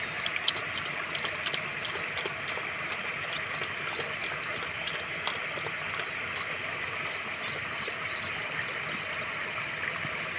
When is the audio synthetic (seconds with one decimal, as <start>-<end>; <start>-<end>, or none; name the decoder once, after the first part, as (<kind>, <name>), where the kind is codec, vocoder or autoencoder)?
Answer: none